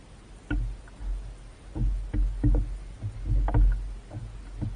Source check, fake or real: real